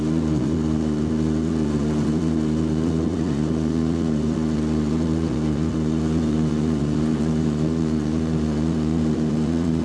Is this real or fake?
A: fake